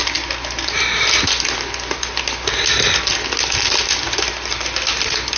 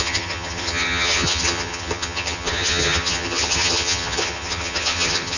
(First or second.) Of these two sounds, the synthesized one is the second